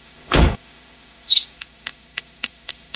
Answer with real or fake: fake